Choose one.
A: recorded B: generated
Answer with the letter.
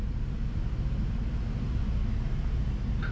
A